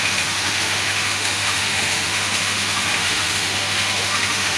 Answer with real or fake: fake